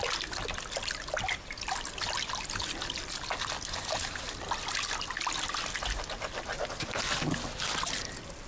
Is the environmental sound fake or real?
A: real